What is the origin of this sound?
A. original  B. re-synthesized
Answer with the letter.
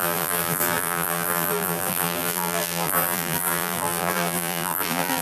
B